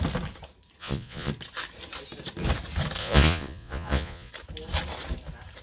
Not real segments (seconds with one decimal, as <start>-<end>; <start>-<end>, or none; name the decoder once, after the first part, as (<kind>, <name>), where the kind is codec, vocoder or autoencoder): 0.8-1.3 (vocoder, Vocos); 3.0-4.3